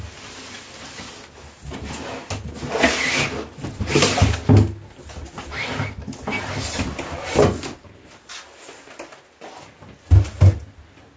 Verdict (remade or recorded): recorded